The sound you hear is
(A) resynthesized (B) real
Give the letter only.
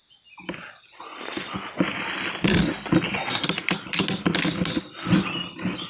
B